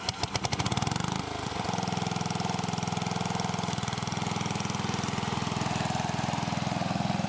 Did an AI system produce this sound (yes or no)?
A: no